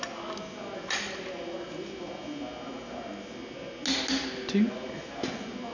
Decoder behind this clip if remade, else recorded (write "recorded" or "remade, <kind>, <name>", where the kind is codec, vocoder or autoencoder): recorded